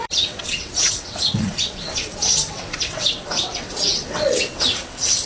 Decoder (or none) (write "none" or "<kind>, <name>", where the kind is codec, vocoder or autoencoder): vocoder, WaveNeXt